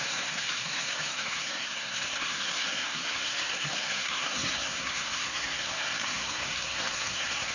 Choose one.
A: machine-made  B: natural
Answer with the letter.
A